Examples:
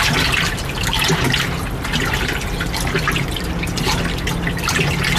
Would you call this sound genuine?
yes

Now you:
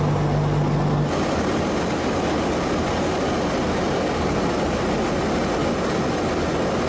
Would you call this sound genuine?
yes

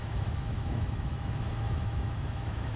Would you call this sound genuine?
no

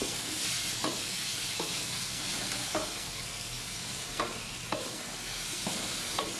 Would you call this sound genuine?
no